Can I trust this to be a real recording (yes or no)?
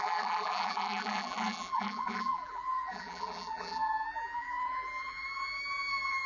no